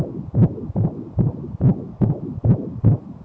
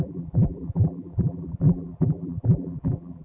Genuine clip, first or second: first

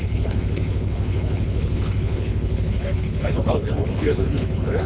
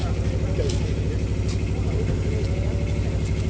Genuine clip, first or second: second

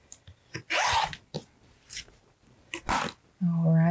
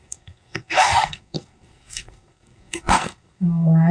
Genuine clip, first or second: first